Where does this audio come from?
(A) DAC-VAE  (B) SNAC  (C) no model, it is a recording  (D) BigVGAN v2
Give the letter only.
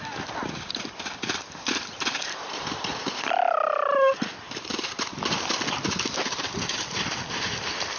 D